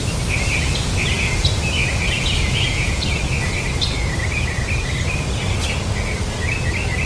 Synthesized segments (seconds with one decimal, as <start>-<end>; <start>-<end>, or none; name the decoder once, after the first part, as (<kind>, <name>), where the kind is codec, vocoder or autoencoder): 1.8-3.2 (vocoder, Vocos)